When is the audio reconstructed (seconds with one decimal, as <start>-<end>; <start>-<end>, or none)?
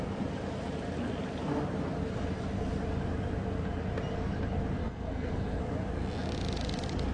4.8-5.6